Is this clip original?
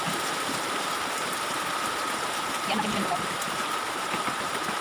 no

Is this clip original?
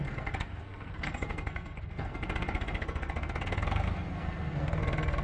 no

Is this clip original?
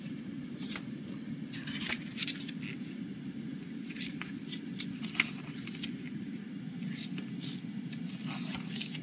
yes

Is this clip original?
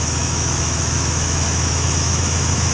no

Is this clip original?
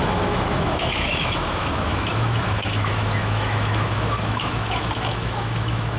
no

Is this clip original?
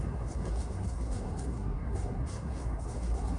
no